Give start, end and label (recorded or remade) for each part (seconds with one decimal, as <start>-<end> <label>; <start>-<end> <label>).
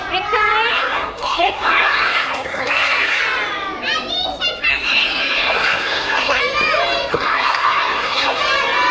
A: 0.0-0.7 recorded; 0.7-3.2 remade; 3.2-4.7 recorded; 4.7-6.4 remade; 6.4-7.1 recorded; 7.1-8.4 remade; 8.4-8.9 recorded